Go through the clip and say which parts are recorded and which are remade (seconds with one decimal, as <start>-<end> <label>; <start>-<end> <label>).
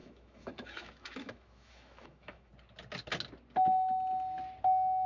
0.0-2.5 remade; 2.5-5.1 recorded